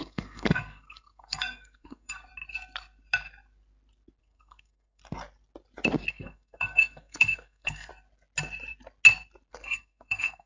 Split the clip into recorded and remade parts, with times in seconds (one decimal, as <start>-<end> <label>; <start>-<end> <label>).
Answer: 0.0-2.3 remade; 2.3-4.2 recorded; 4.2-5.0 remade; 5.0-6.1 recorded; 6.1-7.9 remade; 7.9-9.5 recorded; 9.5-10.5 remade